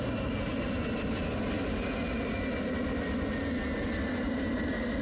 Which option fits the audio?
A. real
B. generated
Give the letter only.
A